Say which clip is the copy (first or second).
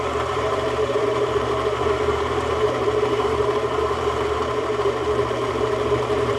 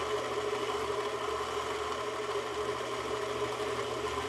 first